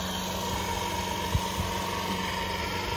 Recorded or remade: recorded